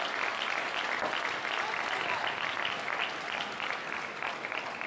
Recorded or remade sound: recorded